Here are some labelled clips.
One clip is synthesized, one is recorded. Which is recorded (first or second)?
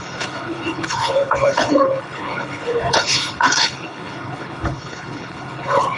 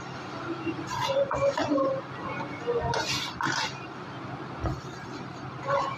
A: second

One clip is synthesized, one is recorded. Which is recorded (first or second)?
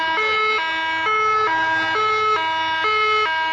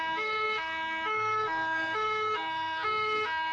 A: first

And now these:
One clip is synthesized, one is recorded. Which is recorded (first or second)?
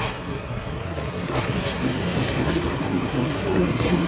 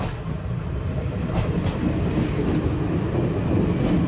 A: second